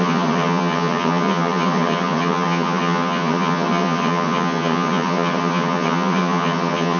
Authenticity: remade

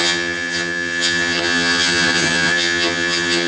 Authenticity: remade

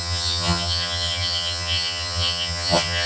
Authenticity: remade